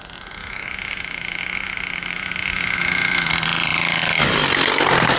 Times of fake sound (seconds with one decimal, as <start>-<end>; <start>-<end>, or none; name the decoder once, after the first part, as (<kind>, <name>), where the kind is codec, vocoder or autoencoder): 0.4-3.3 (autoencoder, DAC-VAE)